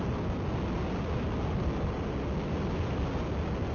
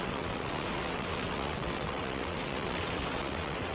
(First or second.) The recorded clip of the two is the first